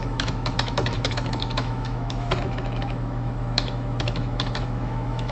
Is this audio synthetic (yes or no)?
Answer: yes